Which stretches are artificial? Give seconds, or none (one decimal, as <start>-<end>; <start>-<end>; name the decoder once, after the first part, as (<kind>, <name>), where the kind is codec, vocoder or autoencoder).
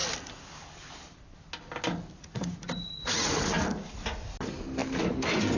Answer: 2.2-3.4 (vocoder, Vocos)